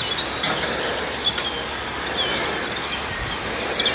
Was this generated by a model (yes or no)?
no